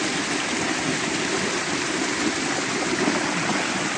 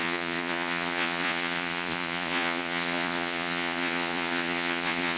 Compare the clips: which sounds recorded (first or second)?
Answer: first